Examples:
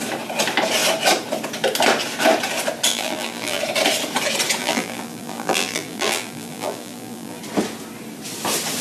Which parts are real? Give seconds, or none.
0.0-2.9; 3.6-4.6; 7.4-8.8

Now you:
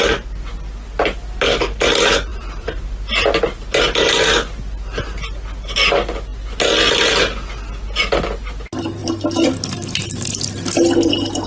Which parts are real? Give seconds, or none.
0.0-2.3; 2.8-11.5